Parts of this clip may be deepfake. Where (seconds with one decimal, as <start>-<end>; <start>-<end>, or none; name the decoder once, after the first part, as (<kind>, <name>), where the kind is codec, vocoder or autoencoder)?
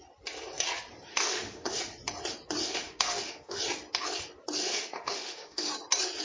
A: 1.1-1.8 (autoencoder, DAC-VAE); 2.6-3.6; 4.6-5.7